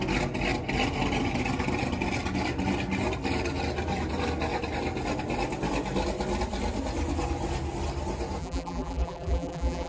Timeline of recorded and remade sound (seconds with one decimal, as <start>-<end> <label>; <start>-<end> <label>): 0.0-8.4 recorded; 8.4-9.9 remade